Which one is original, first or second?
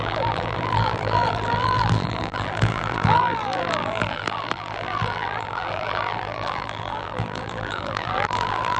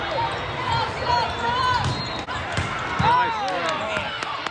second